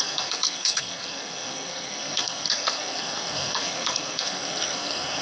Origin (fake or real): fake